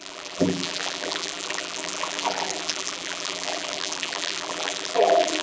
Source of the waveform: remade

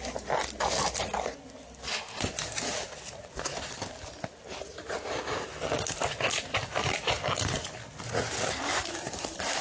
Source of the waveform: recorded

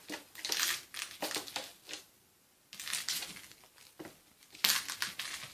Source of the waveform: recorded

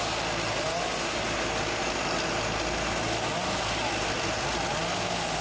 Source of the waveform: recorded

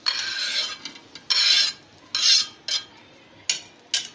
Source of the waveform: recorded